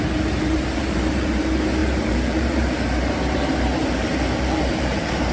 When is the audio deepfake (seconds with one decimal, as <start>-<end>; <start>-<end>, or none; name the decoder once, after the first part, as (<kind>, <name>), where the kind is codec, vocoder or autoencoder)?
0.0-5.3 (vocoder, BigVGAN v2)